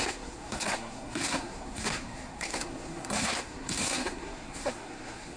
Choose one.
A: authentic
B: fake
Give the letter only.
B